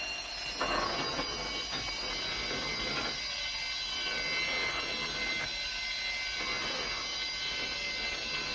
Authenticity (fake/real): real